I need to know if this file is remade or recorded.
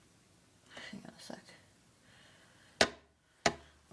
recorded